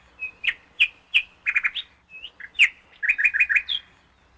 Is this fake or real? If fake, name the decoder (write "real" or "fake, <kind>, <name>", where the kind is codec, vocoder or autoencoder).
real